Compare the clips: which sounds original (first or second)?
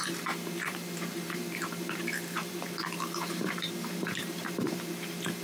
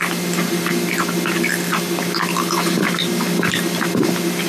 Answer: second